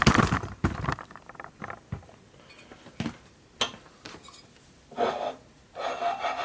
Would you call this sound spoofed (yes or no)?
no